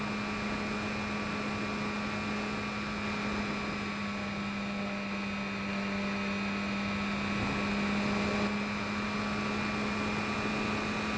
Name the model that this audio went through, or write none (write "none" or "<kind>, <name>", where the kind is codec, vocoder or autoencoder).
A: none